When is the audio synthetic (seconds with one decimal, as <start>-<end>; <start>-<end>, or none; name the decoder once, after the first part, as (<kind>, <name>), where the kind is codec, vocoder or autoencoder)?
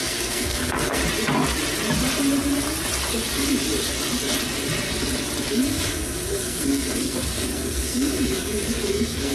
0.0-1.0 (codec, SNAC); 5.5-9.3